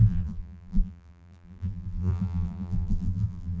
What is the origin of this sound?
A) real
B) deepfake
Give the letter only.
B